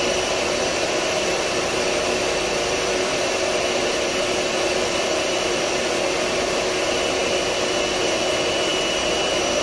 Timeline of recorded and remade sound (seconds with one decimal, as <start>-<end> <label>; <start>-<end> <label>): 0.0-7.2 remade; 7.2-7.9 recorded; 7.9-9.6 remade